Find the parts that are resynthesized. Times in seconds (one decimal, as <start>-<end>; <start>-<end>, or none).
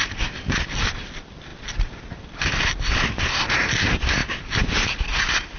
4.2-5.6